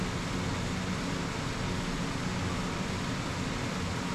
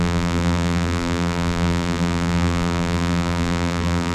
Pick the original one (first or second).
first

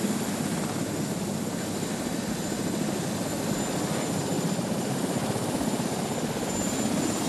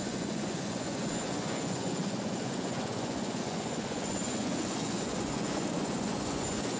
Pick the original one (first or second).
first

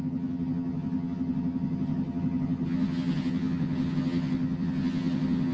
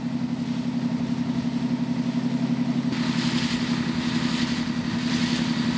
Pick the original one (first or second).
second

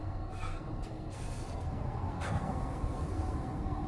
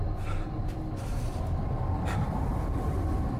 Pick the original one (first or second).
second